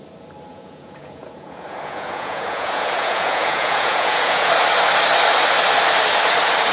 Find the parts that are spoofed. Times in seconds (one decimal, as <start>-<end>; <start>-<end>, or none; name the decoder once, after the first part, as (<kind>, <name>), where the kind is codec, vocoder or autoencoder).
0.5-4.5 (vocoder, Vocos)